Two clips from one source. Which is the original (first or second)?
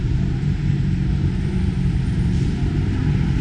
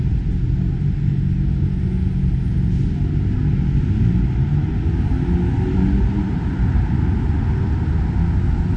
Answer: second